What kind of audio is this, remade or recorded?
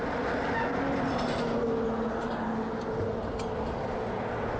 recorded